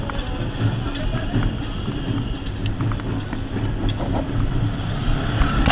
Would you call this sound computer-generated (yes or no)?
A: no